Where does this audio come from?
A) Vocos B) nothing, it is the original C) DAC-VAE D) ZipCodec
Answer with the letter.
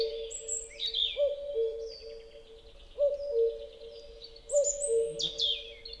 B